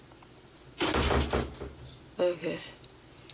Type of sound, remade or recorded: recorded